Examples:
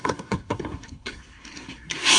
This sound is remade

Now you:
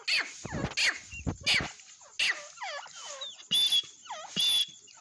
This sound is recorded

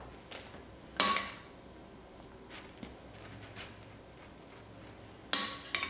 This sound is recorded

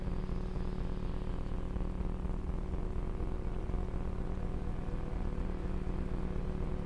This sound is recorded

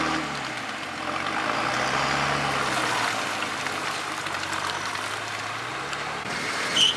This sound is recorded